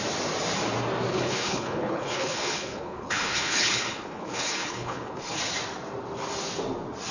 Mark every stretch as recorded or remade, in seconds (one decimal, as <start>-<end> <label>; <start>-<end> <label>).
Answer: 0.0-1.1 recorded; 1.1-5.4 remade; 5.4-7.1 recorded